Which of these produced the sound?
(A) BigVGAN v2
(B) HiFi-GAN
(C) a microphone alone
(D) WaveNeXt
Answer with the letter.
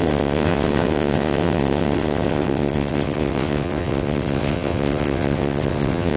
D